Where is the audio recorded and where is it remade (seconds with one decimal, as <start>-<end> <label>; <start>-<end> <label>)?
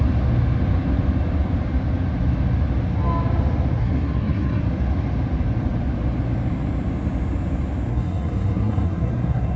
0.0-3.8 recorded; 3.8-4.6 remade; 4.6-7.9 recorded; 7.9-9.6 remade